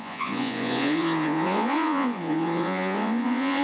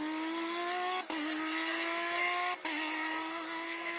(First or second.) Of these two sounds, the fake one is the first